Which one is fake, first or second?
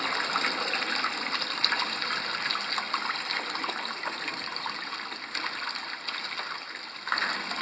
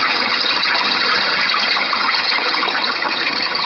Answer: second